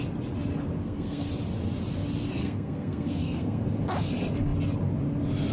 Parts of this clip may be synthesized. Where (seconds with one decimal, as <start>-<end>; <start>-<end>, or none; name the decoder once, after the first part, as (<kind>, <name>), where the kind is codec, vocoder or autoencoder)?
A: 0.8-1.3 (codec, SNAC); 2.4-3.6